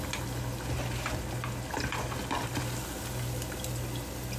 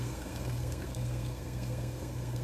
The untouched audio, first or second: first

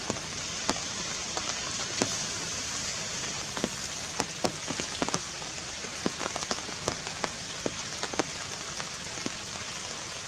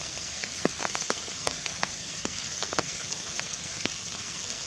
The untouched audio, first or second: first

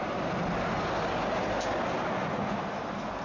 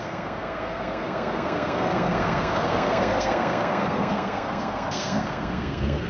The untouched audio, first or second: first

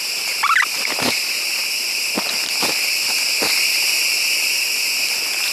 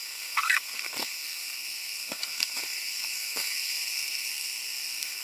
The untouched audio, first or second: first